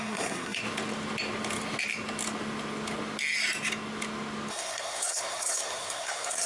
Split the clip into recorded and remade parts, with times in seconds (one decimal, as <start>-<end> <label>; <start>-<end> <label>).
0.0-0.6 remade; 0.6-4.5 recorded; 4.5-6.5 remade